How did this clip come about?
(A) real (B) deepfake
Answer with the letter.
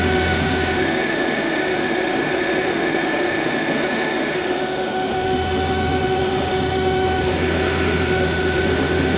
B